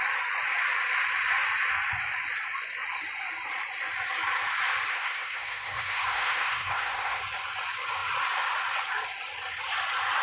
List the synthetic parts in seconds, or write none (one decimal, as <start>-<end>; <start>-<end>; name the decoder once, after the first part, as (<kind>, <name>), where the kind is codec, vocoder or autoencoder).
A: 4.9-7.2 (codec, SNAC)